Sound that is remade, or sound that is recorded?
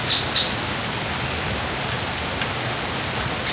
recorded